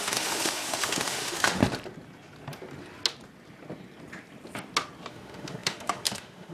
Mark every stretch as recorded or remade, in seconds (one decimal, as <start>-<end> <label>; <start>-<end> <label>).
0.0-1.6 remade; 1.6-5.1 recorded; 5.1-6.5 remade